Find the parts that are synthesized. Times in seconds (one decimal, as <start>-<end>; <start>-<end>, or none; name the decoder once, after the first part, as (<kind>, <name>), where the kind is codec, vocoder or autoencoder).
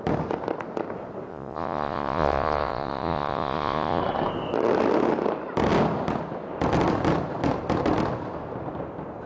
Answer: 1.3-4.0 (vocoder, Vocos)